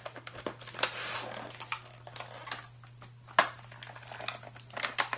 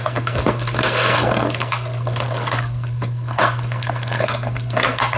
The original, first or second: first